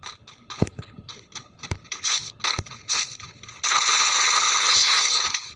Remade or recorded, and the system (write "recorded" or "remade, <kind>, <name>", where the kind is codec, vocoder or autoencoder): remade, codec, HILCodec